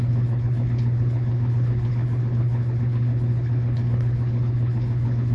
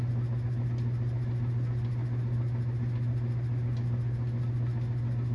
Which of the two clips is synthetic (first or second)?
first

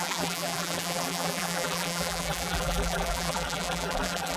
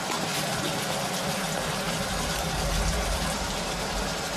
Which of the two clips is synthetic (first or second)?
first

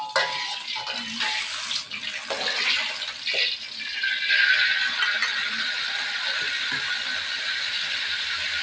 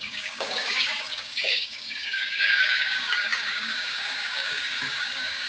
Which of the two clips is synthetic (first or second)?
second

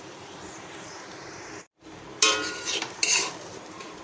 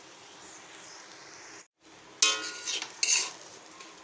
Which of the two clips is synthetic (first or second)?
first